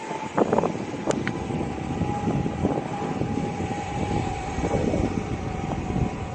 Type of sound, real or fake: real